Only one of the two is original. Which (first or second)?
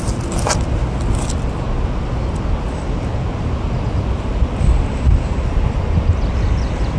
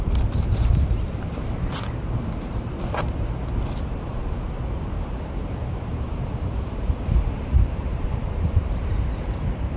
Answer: first